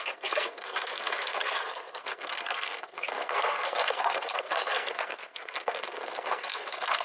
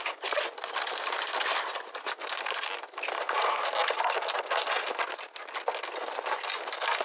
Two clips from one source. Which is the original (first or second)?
second